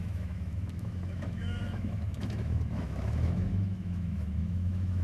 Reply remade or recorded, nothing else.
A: remade